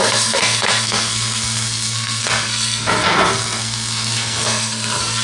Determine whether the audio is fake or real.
fake